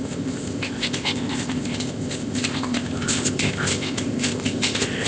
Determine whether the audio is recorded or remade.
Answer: remade